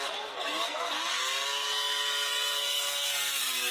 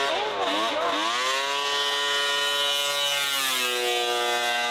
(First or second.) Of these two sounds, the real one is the second